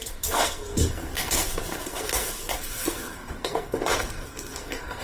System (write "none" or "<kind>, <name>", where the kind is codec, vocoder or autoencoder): codec, SNAC